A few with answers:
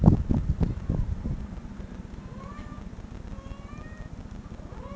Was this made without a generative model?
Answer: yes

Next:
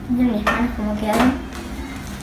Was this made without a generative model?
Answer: yes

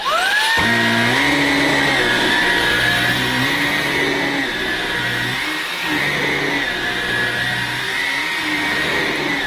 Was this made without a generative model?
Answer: yes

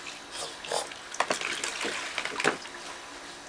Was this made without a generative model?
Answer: yes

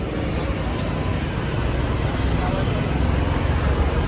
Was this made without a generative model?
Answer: yes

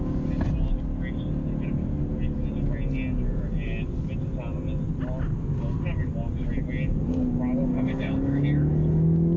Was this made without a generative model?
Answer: yes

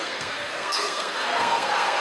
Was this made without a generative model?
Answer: no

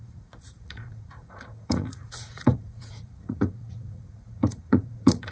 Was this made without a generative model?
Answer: no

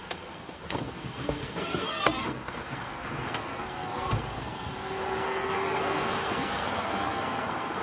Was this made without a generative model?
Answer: no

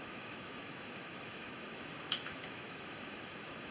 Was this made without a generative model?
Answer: no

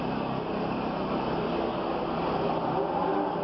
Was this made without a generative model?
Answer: yes